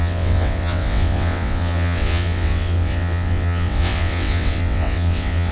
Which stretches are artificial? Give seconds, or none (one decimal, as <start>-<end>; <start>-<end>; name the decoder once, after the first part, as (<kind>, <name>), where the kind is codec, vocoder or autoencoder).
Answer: 0.0-5.5 (vocoder, WaveNeXt)